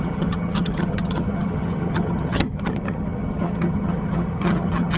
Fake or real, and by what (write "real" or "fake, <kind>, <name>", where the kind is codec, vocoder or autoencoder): fake, vocoder, HiFi-GAN